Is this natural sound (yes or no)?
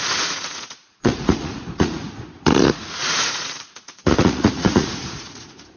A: no